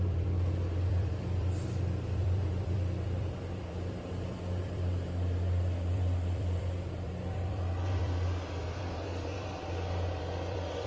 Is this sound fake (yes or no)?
yes